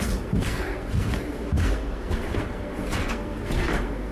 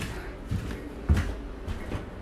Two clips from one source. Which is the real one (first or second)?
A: second